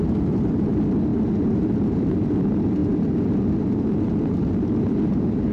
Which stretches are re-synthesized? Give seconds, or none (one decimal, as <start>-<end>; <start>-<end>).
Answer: none